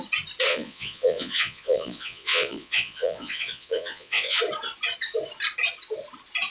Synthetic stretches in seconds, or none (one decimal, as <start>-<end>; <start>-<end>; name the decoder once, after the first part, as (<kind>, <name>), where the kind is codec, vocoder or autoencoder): 0.5-4.4 (vocoder, Vocos)